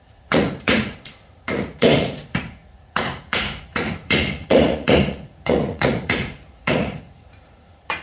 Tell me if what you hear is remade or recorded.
remade